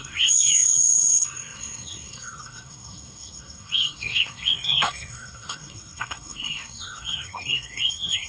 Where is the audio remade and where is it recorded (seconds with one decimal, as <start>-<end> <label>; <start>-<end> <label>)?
0.0-8.3 remade